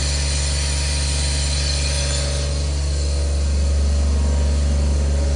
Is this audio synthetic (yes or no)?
no